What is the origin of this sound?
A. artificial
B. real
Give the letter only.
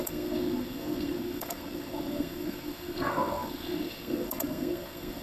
A